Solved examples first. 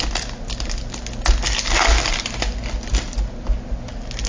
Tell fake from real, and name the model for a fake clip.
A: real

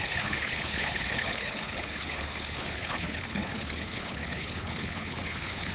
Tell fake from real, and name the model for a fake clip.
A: fake, codec, HILCodec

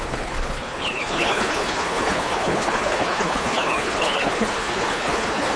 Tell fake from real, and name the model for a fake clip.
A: fake, codec, HILCodec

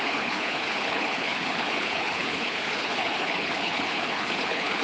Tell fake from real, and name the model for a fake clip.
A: fake, codec, HILCodec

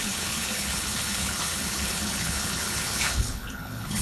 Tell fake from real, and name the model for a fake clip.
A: fake, codec, HILCodec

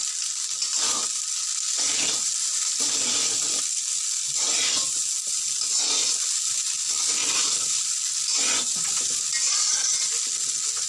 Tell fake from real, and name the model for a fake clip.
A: real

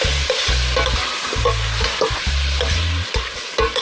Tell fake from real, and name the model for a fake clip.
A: real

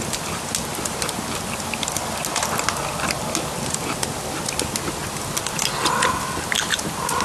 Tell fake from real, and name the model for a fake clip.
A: real